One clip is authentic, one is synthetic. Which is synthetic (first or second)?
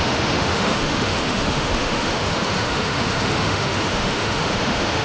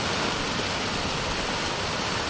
first